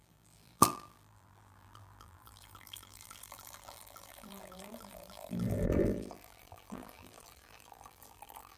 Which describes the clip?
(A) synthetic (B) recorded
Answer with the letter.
A